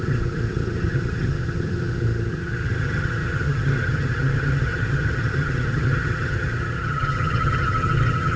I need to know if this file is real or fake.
fake